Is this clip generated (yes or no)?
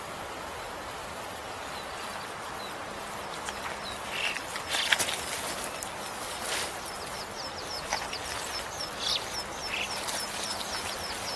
no